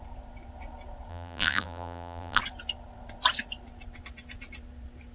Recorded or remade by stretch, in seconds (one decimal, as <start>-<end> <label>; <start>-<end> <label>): 0.0-1.1 recorded; 1.1-2.4 remade; 2.4-5.1 recorded

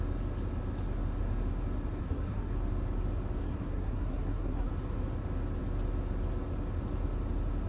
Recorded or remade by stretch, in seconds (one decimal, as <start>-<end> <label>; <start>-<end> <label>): 0.0-2.0 recorded; 2.0-2.5 remade; 2.5-3.4 recorded; 3.4-4.7 remade; 4.7-7.7 recorded

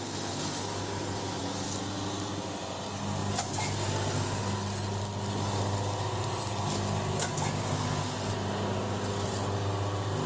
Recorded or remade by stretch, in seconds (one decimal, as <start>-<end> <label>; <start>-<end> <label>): 0.0-10.3 recorded